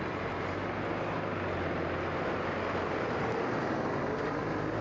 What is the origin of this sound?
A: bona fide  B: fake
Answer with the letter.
A